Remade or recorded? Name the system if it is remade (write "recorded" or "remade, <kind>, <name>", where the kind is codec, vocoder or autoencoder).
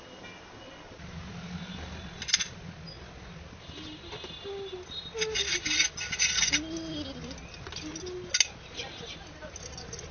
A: recorded